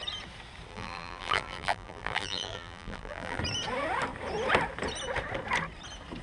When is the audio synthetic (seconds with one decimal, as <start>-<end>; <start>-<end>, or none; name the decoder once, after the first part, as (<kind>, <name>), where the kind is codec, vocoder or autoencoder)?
0.7-3.4 (vocoder, BigVGAN v2)